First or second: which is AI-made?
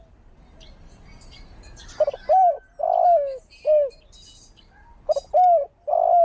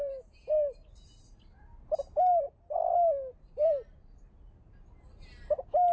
second